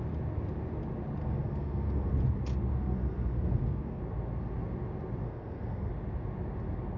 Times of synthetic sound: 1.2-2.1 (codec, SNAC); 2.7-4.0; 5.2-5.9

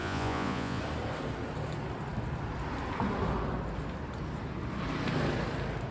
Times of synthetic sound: 0.0-0.8 (vocoder, Vocos)

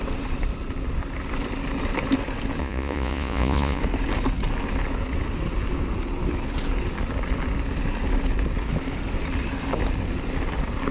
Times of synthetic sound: 2.6-3.8 (vocoder, Vocos)

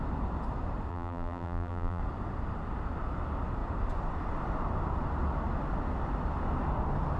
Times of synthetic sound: 0.9-2.0 (vocoder, BigVGAN v2)

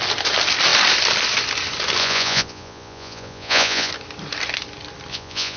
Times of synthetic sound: 2.0-3.9 (vocoder, Vocos); 5.1-5.6

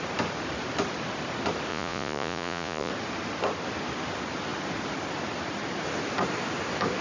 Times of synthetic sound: 1.7-2.9 (vocoder, Vocos)